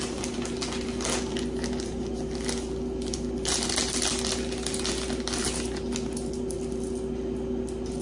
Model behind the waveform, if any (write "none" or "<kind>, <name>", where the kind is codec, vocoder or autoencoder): none